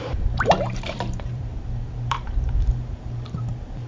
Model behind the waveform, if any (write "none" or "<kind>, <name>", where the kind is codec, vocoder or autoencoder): vocoder, BigVGAN v2